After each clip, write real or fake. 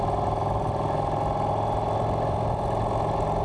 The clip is real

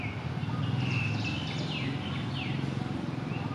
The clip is real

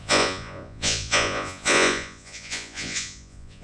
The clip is fake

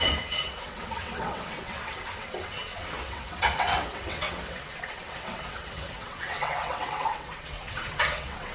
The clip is fake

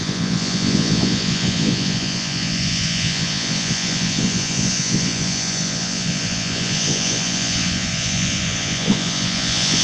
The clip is fake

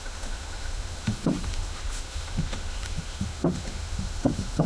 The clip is fake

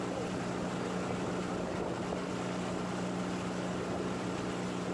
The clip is real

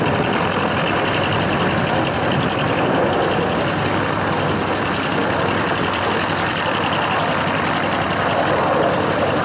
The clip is real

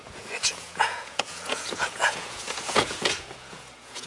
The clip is fake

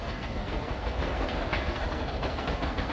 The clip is fake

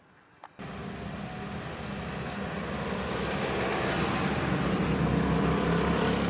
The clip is real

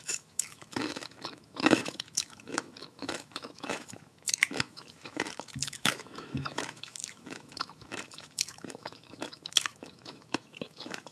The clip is fake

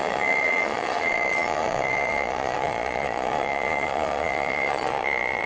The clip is fake